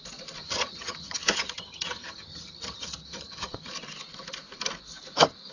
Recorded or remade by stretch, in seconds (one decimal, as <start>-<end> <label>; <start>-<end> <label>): 0.0-0.4 recorded; 0.4-3.7 remade; 3.7-5.5 recorded